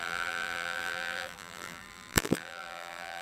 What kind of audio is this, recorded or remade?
remade